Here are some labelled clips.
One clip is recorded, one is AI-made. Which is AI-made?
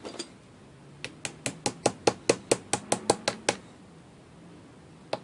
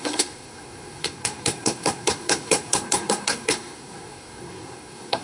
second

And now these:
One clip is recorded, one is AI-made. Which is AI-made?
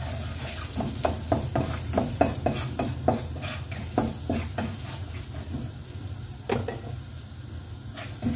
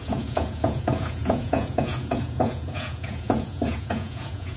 second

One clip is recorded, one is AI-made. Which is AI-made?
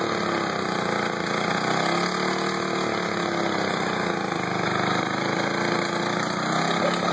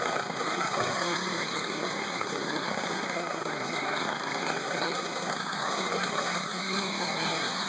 second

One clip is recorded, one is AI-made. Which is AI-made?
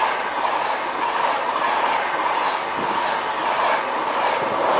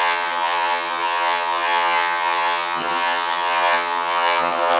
second